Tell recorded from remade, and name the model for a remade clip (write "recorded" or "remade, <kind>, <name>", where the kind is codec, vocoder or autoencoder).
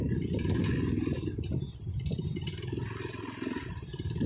recorded